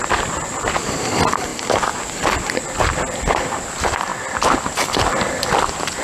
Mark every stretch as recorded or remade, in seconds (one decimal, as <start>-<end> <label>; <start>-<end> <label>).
0.0-1.5 remade; 1.5-2.2 recorded; 2.2-4.1 remade; 4.1-4.6 recorded; 4.6-6.0 remade